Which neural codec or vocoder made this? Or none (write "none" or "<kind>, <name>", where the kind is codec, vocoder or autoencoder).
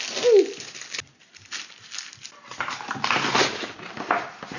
none